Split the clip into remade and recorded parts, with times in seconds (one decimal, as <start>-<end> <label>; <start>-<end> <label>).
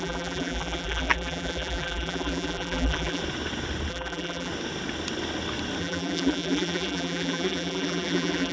0.0-3.2 remade; 3.2-3.9 recorded; 3.9-4.5 remade; 4.5-5.8 recorded; 5.8-8.5 remade